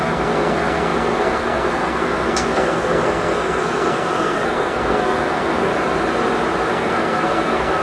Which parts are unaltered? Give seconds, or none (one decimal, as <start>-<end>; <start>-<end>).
5.7-6.7